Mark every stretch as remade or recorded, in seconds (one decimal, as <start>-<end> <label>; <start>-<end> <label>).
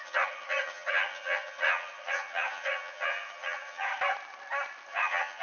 0.0-3.9 remade; 3.9-4.9 recorded; 4.9-5.4 remade